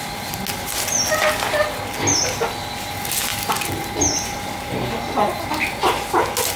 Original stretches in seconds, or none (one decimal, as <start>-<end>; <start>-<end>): 0.0-6.6